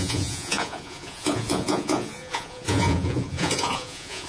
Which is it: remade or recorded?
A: remade